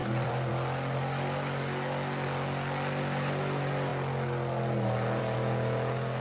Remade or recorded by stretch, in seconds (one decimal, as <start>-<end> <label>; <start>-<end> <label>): 0.0-0.5 remade; 0.5-6.2 recorded